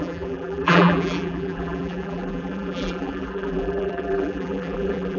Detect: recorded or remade remade